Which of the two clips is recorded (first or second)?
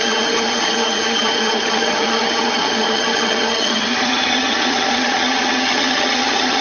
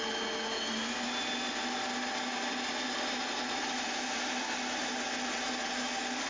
second